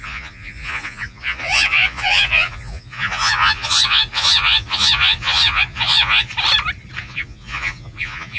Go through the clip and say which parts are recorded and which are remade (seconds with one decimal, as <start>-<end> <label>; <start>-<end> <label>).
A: 0.0-6.3 remade; 6.3-7.0 recorded; 7.0-8.4 remade